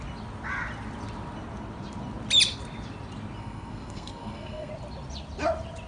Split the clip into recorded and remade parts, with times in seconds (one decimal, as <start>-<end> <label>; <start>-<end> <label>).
0.0-3.4 recorded; 3.4-4.7 remade; 4.7-5.9 recorded